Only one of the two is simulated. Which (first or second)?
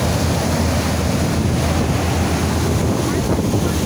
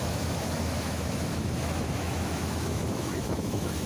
second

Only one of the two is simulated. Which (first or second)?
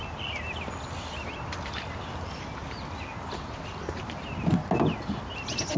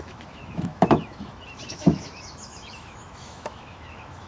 second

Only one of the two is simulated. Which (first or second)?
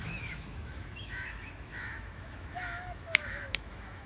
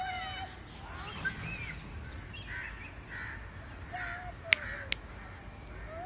first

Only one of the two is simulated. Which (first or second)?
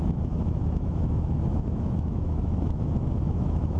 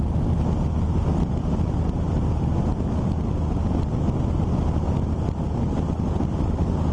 first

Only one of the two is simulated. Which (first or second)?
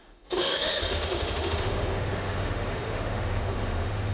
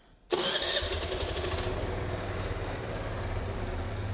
first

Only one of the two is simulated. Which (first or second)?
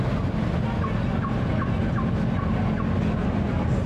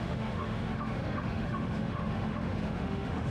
second